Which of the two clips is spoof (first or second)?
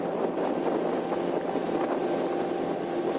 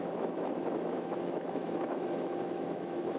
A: second